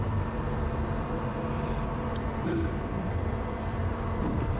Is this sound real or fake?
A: fake